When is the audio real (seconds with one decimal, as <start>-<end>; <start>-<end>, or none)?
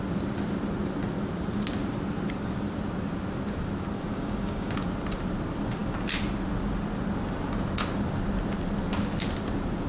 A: 0.0-4.1; 4.7-9.9